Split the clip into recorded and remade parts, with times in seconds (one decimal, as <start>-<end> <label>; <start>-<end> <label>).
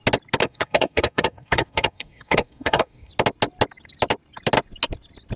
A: 0.0-0.4 recorded; 0.4-3.1 remade; 3.1-5.4 recorded